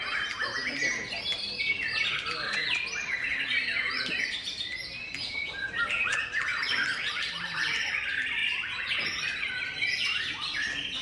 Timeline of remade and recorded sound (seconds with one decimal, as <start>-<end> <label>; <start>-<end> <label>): 0.0-2.6 recorded; 2.6-4.5 remade; 4.5-6.5 recorded; 6.5-7.9 remade; 7.9-11.0 recorded